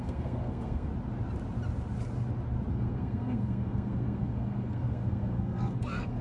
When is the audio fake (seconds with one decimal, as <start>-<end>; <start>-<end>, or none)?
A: 0.0-0.9; 2.7-6.2